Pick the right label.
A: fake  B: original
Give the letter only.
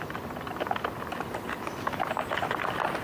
B